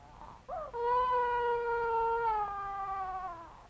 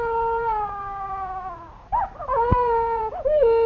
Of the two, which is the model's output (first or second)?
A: second